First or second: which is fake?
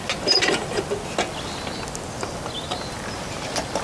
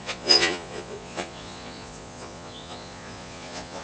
second